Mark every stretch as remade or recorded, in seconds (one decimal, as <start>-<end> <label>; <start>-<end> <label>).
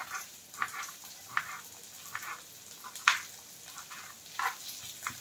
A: 0.0-1.4 remade; 1.4-5.2 recorded